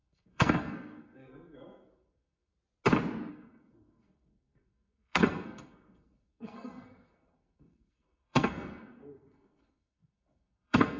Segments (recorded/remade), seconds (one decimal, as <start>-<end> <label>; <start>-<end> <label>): 0.0-2.5 remade; 2.5-3.3 recorded; 3.3-11.0 remade